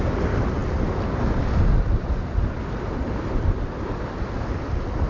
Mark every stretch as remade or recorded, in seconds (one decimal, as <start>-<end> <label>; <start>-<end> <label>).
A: 0.0-5.1 recorded